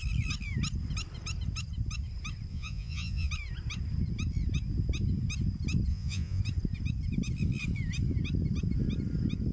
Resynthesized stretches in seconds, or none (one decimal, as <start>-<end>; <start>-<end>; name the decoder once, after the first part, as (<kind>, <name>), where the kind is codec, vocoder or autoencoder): 2.5-3.3 (vocoder, Vocos); 5.9-6.4

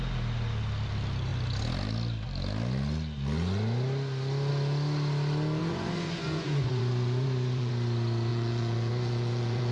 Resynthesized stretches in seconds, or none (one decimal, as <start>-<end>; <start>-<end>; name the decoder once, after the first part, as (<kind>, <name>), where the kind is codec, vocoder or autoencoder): 5.6-7.7 (vocoder, Vocos); 8.3-9.7